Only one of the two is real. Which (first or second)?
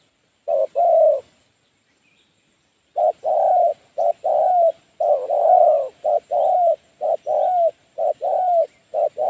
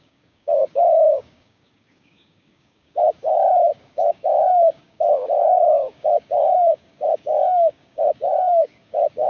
first